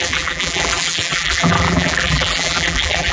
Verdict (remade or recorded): remade